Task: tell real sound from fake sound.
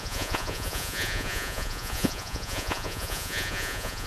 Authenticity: fake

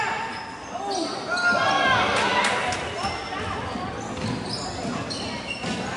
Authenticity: real